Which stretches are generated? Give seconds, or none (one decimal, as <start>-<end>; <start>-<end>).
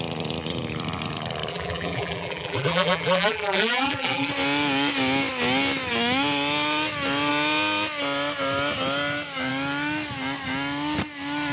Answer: 1.5-4.3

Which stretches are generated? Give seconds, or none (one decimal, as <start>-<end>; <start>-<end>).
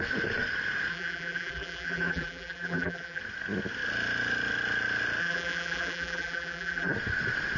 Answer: 0.9-3.2; 5.2-6.9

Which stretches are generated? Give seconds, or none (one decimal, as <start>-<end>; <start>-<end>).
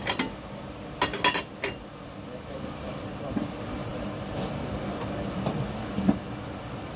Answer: none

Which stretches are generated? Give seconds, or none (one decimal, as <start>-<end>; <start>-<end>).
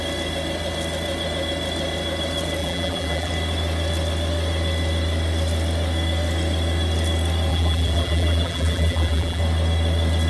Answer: 2.6-3.3; 7.5-9.4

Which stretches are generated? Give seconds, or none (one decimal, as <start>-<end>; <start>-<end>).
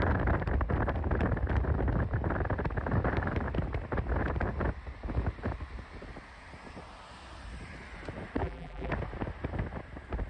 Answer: 8.4-8.9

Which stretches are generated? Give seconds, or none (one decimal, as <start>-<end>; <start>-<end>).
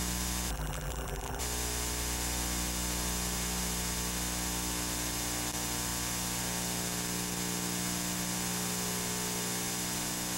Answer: 0.5-1.4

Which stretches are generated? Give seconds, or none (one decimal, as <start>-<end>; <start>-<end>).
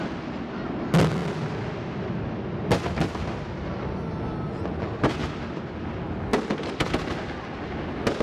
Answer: none